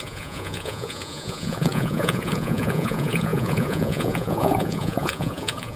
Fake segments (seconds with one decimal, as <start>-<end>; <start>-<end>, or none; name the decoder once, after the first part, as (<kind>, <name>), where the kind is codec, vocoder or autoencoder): 0.0-5.8 (vocoder, Vocos)

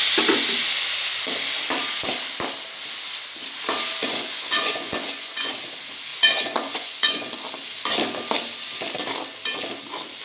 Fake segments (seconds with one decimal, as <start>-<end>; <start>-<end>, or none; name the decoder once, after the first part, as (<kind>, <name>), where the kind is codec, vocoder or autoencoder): 4.0-5.5 (vocoder, Vocos); 6.1-7.3

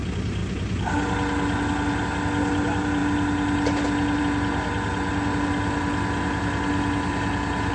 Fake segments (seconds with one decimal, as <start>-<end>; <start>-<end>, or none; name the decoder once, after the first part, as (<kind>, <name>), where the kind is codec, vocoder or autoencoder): none

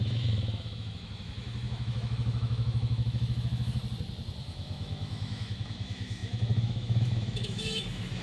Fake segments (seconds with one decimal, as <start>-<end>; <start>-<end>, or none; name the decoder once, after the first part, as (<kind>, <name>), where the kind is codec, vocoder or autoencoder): 0.0-3.8 (autoencoder, DAC-VAE); 4.4-8.2